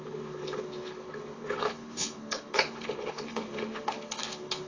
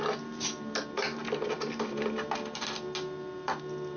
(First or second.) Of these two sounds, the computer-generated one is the first